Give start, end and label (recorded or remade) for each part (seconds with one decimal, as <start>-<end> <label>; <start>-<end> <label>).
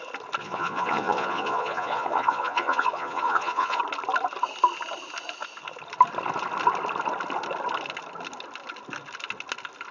0.0-0.4 recorded; 0.4-3.8 remade; 3.8-9.9 recorded